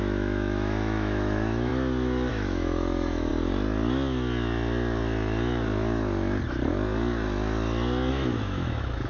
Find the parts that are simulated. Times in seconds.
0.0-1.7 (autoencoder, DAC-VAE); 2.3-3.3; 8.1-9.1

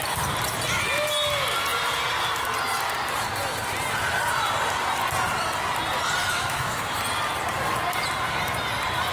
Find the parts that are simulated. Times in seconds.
6.2-7.0 (autoencoder, DAC-VAE)

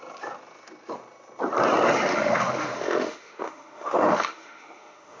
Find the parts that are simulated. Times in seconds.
2.1-5.2 (autoencoder, DAC-VAE)

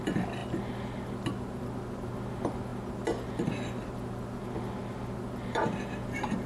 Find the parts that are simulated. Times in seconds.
none

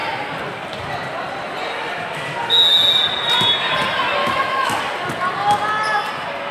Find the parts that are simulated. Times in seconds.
4.2-4.8 (autoencoder, DAC-VAE)

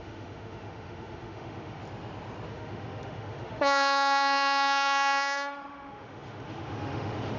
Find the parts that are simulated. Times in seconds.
0.0-1.8 (autoencoder, DAC-VAE); 2.5-7.4

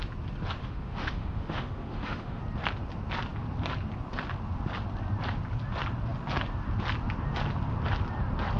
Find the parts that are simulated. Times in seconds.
0.6-2.4 (autoencoder, DAC-VAE)